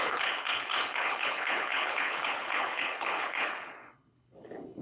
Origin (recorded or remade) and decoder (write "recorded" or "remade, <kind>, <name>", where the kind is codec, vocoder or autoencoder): remade, codec, HILCodec